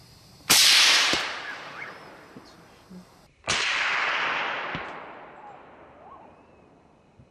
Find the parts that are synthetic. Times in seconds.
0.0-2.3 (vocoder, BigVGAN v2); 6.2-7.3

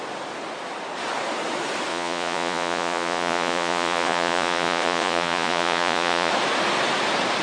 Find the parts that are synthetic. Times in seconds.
1.9-6.3 (vocoder, Vocos)

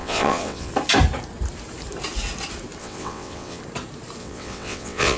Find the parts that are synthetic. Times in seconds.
0.0-0.7 (vocoder, WaveNeXt); 2.8-3.6; 4.2-5.2

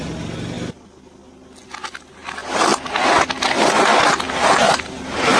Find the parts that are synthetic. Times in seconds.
none

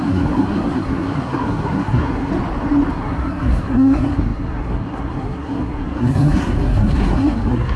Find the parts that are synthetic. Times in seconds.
0.0-2.3 (codec, SNAC); 2.9-7.8

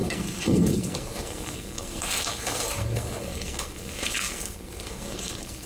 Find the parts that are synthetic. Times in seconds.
0.0-5.7 (codec, SNAC)

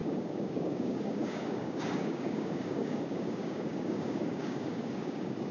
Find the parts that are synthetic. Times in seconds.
0.0-5.5 (codec, DAC)